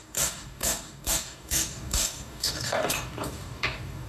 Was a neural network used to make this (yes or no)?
yes